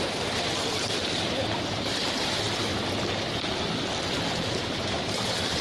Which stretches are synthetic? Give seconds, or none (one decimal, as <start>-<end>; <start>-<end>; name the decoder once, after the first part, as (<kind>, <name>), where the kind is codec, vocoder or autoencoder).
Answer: 0.0-2.7 (vocoder, BigVGAN v2); 4.5-5.6